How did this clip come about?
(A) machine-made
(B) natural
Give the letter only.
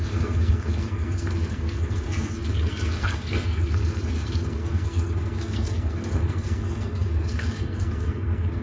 A